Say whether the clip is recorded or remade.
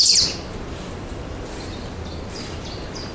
recorded